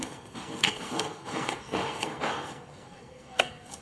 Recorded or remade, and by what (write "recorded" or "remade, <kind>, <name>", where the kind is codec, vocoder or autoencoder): remade, codec, SNAC